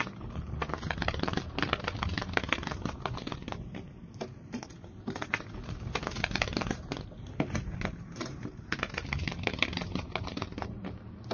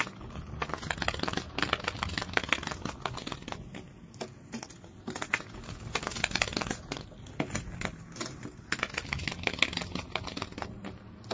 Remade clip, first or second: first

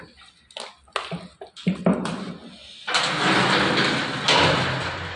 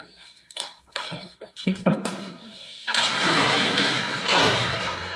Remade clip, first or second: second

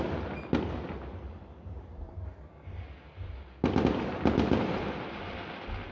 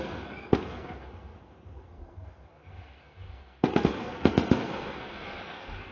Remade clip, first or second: second